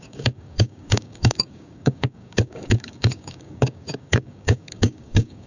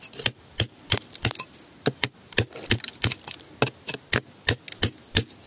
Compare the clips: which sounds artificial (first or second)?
first